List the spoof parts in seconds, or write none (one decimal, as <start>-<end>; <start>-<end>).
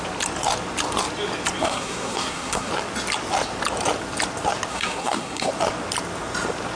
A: 1.6-2.7; 4.7-5.5